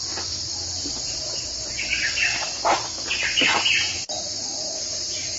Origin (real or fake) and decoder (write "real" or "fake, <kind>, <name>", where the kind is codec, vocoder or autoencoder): real